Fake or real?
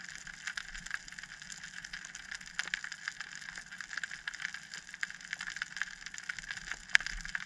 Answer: real